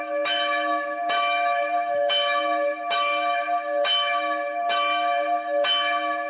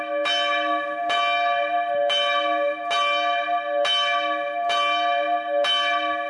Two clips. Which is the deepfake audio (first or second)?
first